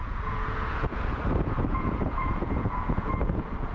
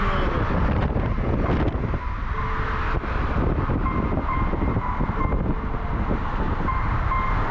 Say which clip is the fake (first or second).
first